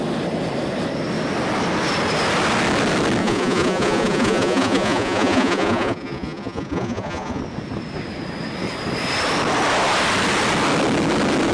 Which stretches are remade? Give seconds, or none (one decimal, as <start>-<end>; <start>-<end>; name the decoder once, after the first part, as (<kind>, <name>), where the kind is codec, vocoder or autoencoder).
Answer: 3.2-7.4 (vocoder, Vocos)

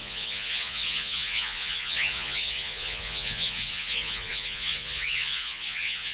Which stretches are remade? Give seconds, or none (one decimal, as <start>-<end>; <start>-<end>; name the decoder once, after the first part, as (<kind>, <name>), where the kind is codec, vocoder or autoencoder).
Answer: 0.0-6.1 (vocoder, Vocos)

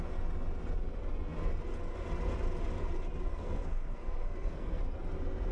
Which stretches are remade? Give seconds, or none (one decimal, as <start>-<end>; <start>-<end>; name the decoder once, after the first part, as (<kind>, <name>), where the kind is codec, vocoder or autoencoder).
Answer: 3.3-4.8 (codec, SNAC)

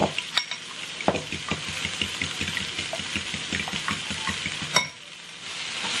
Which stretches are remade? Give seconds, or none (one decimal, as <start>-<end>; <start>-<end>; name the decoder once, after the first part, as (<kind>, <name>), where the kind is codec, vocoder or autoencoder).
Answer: none

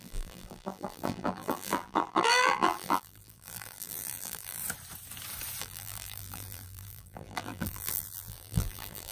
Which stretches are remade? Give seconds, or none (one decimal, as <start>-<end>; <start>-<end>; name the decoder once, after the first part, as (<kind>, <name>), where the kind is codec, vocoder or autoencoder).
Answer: 0.0-4.6 (vocoder, BigVGAN v2); 5.6-9.1

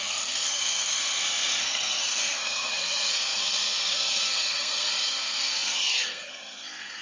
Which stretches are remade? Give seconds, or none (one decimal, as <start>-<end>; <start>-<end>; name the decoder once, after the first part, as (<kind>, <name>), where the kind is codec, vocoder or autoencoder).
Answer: 0.0-7.0 (codec, SNAC)

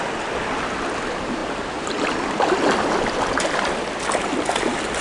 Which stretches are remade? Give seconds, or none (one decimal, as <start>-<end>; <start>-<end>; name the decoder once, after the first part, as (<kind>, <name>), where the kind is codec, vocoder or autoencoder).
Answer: none